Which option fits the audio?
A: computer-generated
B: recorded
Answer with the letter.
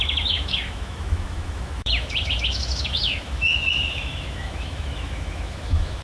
A